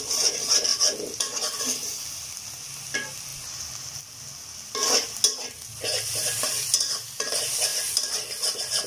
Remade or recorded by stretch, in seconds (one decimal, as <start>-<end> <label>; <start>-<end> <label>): 0.0-7.7 recorded; 7.7-8.9 remade